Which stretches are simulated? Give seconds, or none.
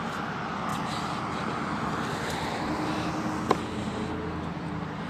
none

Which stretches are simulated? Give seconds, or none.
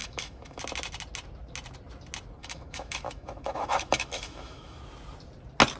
0.0-0.6 (autoencoder, DAC-VAE); 2.4-4.8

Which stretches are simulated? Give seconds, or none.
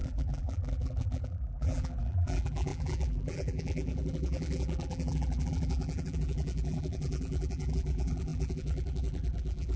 0.0-9.8 (vocoder, BigVGAN v2)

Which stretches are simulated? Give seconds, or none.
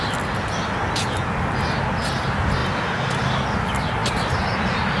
none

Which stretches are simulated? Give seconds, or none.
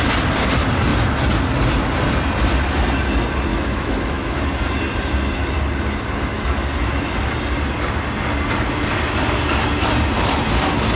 3.5-4.4 (autoencoder, DAC-VAE)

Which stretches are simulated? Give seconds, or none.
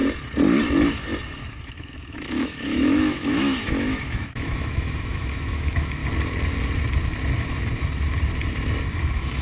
1.7-6.0 (autoencoder, DAC-VAE); 9.0-9.4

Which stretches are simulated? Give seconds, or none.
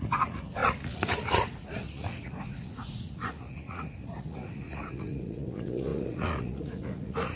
0.0-7.4 (vocoder, Vocos)